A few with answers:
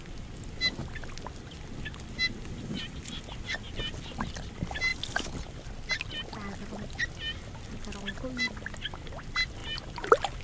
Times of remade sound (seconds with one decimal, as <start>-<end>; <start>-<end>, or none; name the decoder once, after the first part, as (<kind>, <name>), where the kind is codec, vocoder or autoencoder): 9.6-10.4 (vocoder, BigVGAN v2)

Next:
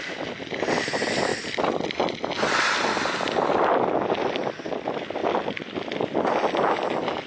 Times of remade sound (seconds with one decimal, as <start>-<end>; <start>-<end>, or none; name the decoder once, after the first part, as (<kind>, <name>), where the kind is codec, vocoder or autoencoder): none

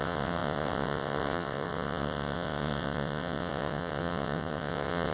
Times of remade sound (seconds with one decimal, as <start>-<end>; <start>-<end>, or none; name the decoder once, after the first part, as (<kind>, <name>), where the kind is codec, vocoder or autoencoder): 0.0-5.1 (vocoder, WaveNeXt)

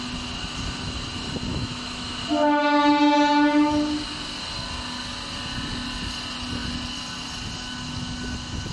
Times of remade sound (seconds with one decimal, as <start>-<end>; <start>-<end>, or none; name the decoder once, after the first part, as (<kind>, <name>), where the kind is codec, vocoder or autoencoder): 1.5-2.2 (autoencoder, DAC-VAE)